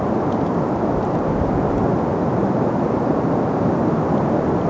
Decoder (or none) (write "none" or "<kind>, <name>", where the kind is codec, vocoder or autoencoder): none